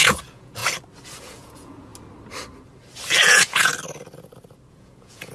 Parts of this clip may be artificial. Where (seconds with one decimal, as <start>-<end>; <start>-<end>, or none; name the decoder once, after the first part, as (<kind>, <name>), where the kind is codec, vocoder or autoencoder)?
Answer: 0.0-0.6 (vocoder, Vocos); 1.2-1.9; 3.3-3.7; 4.7-5.3